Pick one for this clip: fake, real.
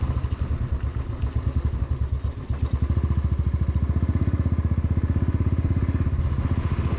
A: real